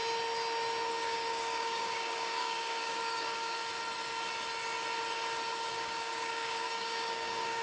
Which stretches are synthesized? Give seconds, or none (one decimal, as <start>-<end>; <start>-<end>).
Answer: 0.9-3.6; 5.7-7.6